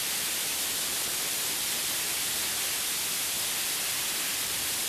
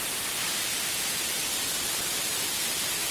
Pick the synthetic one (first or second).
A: second